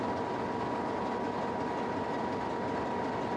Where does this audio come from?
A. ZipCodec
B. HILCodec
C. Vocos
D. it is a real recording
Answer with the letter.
D